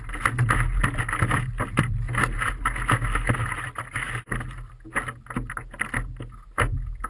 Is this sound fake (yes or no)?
no